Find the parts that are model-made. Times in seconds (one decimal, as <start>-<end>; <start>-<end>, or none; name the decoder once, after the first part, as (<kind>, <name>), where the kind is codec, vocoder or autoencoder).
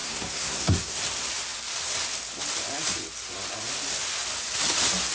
0.0-1.0 (codec, SNAC)